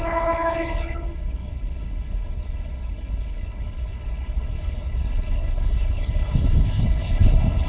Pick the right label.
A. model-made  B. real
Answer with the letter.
A